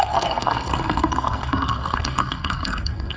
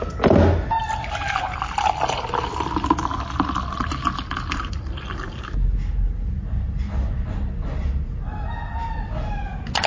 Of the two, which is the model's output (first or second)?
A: first